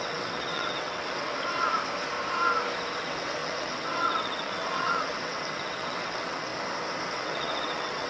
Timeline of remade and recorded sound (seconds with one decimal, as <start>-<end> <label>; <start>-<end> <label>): 0.0-1.3 remade; 1.3-3.0 recorded; 3.0-6.5 remade; 6.5-7.1 recorded; 7.1-8.1 remade